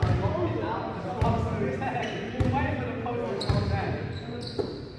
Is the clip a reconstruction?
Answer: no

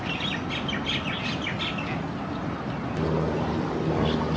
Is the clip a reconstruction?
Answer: no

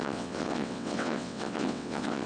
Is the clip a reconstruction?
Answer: yes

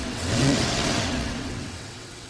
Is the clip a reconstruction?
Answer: yes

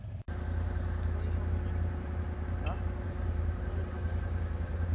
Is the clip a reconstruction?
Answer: no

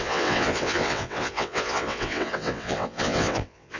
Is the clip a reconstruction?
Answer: yes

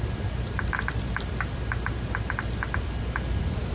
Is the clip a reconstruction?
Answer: no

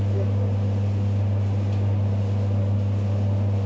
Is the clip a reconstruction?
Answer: no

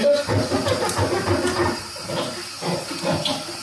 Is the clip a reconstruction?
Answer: no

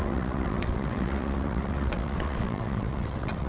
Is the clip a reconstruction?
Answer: yes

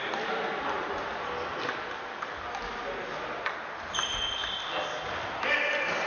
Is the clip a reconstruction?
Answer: no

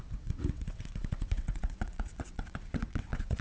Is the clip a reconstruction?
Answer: yes